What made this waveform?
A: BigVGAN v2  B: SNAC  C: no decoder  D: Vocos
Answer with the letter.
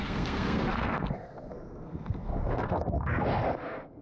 B